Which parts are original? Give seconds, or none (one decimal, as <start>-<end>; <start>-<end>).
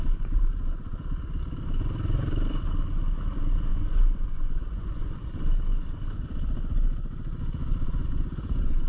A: 0.0-3.7; 5.3-7.6